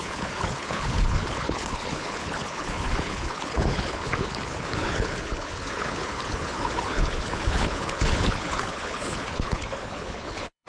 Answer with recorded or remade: remade